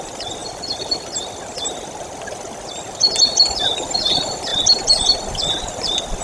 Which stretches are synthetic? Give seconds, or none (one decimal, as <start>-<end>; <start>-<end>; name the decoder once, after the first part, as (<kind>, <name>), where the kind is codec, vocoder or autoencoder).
none